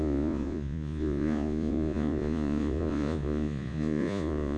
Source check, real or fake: fake